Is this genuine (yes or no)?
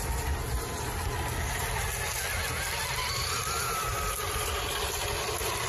yes